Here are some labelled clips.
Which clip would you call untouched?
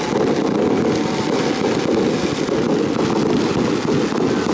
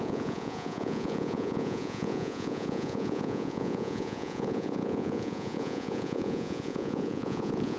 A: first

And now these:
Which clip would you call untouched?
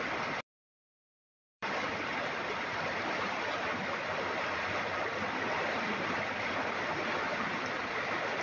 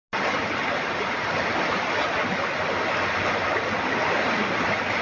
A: second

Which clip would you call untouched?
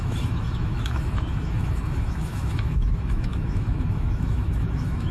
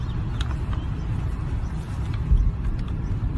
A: second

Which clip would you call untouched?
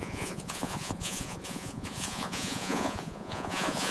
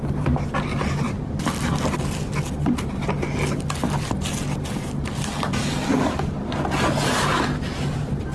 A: second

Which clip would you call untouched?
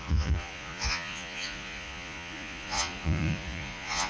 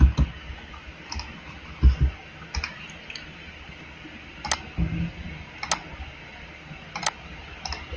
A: second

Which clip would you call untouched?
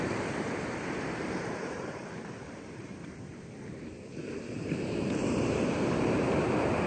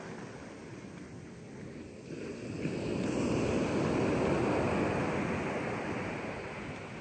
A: second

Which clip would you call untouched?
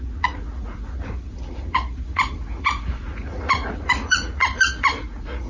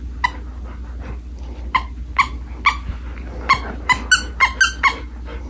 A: second